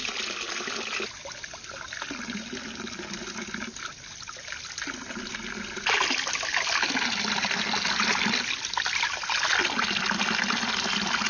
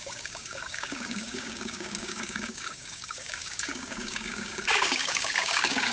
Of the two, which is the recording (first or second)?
first